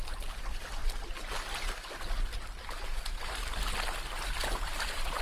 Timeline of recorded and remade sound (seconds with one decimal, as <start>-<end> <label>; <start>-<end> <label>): 0.0-5.2 recorded